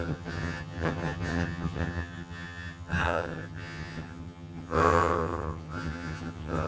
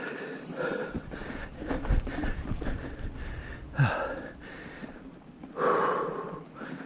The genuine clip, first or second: second